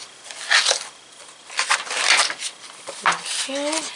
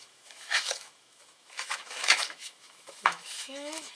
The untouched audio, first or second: first